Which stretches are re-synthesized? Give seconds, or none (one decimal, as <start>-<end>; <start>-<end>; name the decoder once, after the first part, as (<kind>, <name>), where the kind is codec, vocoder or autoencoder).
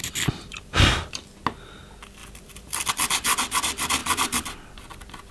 0.5-1.2 (vocoder, BigVGAN v2); 2.2-2.9; 4.0-5.3